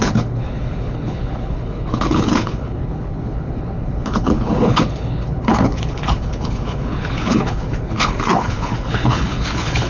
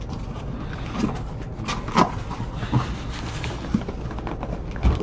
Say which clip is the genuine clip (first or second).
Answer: second